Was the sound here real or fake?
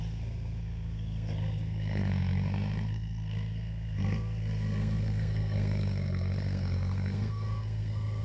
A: fake